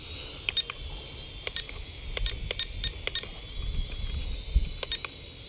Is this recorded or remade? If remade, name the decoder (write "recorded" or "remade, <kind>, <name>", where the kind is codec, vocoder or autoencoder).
recorded